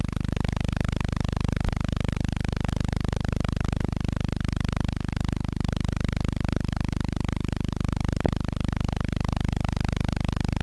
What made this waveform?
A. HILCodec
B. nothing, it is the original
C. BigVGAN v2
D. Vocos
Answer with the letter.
B